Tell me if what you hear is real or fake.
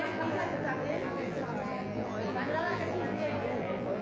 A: fake